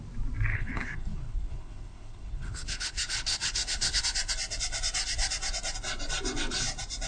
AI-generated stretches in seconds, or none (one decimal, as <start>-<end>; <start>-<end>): 0.5-4.0